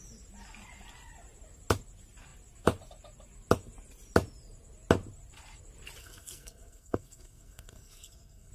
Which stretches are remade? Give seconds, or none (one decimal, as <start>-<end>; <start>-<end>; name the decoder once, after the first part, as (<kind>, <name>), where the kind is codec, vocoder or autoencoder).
6.0-8.5 (codec, SNAC)